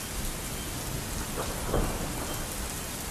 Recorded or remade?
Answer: recorded